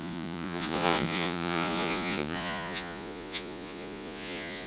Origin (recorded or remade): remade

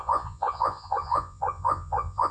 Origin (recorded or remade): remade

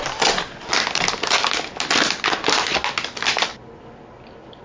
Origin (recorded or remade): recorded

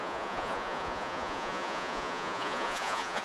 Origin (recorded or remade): remade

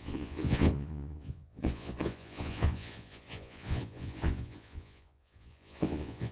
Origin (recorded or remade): remade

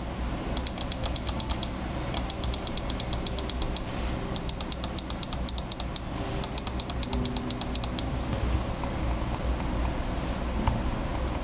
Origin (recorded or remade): recorded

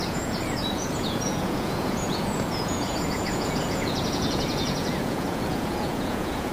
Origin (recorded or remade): remade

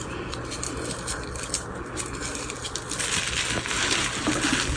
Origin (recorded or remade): recorded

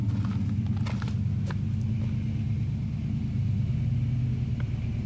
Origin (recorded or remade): recorded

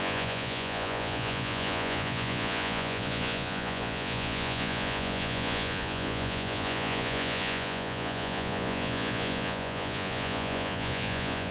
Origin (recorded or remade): remade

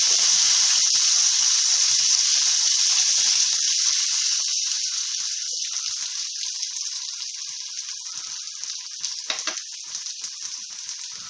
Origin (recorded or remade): recorded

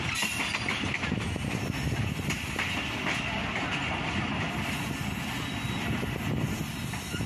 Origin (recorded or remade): recorded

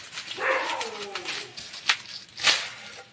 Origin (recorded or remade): recorded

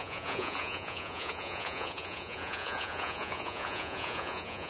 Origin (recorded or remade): remade